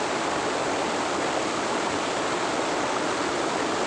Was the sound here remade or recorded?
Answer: recorded